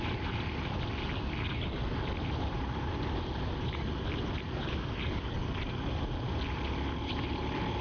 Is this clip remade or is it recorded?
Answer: recorded